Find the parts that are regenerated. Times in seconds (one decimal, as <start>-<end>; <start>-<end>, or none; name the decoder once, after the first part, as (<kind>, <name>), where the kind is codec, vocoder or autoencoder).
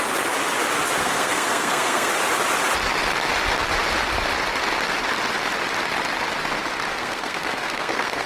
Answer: 1.0-2.1 (codec, SNAC); 6.9-8.3